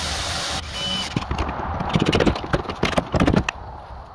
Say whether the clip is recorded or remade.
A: recorded